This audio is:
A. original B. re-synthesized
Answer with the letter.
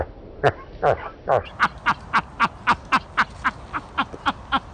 A